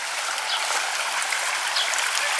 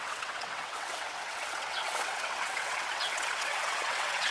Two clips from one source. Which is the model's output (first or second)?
second